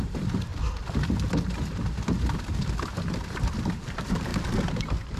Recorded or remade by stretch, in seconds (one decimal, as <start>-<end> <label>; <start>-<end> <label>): 0.0-0.5 remade; 0.5-3.6 recorded; 3.6-4.3 remade; 4.3-5.2 recorded

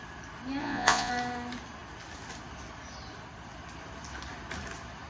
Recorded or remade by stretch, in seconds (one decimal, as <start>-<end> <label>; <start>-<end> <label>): 0.0-0.6 recorded; 0.6-1.1 remade; 1.1-5.1 recorded

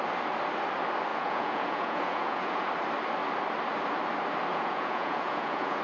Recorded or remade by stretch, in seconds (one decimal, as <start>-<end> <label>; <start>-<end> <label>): 0.0-1.1 recorded; 1.1-2.7 remade; 2.7-4.5 recorded; 4.5-5.8 remade

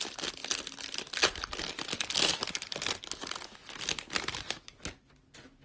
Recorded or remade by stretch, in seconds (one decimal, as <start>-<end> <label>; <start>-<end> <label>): 0.0-5.6 recorded